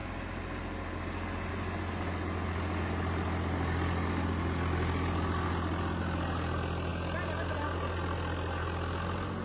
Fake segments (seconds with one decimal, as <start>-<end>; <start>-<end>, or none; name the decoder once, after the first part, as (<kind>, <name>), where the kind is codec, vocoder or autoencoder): none